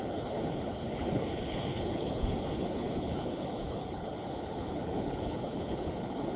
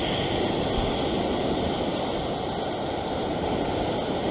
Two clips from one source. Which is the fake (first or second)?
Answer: first